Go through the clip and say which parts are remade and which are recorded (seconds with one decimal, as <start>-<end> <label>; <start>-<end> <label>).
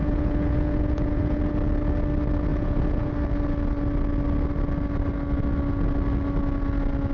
0.0-1.4 remade; 1.4-2.5 recorded; 2.5-3.1 remade; 3.1-7.1 recorded